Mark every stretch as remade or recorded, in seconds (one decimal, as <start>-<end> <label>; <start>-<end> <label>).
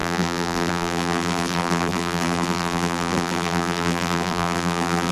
0.0-5.1 remade